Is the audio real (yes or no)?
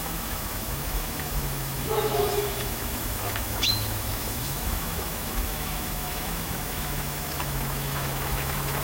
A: no